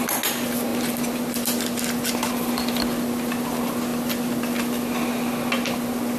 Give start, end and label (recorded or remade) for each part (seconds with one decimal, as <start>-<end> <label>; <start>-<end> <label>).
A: 0.0-6.2 recorded